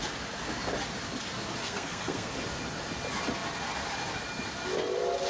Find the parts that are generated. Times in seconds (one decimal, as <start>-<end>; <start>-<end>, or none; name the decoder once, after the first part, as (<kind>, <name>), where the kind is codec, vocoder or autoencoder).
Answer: 1.6-2.3 (codec, SNAC)